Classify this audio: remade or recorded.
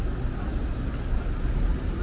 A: recorded